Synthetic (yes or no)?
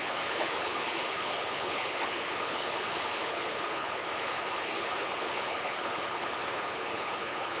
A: yes